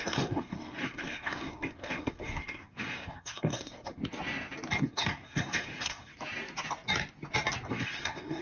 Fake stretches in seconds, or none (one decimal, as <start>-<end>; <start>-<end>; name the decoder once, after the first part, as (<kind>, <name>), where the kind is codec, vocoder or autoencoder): 0.0-4.0 (codec, SNAC); 4.8-6.1; 7.7-8.4

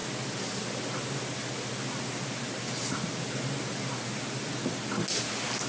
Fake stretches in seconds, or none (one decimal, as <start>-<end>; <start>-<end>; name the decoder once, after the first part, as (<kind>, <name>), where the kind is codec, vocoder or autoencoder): none

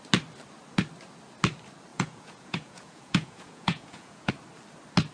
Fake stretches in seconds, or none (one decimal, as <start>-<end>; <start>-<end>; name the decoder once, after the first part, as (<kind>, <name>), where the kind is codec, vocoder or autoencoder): 1.9-4.3 (vocoder, Vocos)

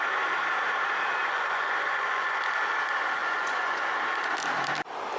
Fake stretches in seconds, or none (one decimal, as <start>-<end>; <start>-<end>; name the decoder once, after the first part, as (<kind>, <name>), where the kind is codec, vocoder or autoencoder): 1.2-2.4 (vocoder, Vocos); 3.2-3.9

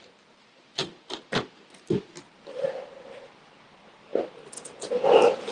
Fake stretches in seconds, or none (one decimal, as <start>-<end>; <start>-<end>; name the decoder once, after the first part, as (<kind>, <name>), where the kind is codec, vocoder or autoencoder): none

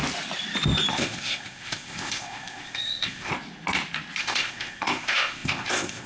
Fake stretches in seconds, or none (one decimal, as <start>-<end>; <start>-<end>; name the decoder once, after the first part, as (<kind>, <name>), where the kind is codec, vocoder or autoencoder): 0.9-3.3 (codec, ZipCodec); 4.2-6.1

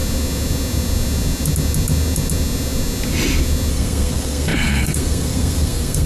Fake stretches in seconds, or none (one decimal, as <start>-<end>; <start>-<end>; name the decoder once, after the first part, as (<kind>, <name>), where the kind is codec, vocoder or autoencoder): 3.7-6.1 (codec, SNAC)